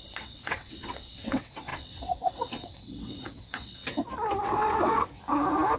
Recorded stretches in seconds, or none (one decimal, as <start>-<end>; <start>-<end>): 3.8-4.4; 5.1-5.8